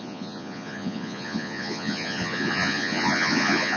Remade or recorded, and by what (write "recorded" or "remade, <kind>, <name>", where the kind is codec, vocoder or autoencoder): remade, vocoder, Vocos